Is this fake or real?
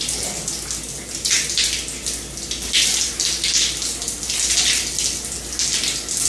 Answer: real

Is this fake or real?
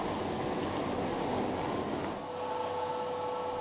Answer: real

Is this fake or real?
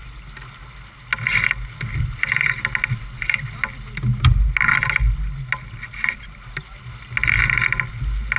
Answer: real